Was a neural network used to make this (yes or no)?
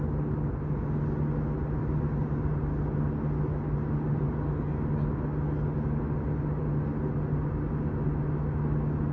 no